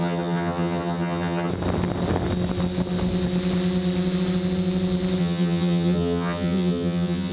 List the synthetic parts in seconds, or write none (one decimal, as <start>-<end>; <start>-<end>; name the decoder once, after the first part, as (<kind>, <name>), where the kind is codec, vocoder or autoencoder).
0.0-1.5 (vocoder, HiFi-GAN); 5.2-7.3

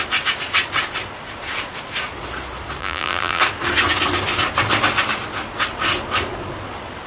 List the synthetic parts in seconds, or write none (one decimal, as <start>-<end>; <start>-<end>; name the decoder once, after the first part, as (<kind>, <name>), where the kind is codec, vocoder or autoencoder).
2.8-3.4 (vocoder, BigVGAN v2)

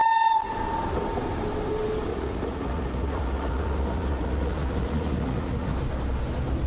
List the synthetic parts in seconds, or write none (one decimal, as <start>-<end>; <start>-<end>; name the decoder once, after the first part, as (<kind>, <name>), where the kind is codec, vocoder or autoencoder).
2.1-5.7 (vocoder, Vocos)